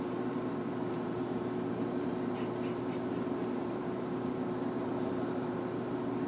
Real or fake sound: fake